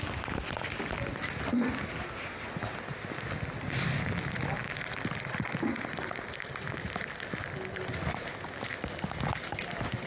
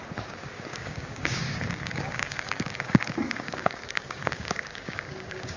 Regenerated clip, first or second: second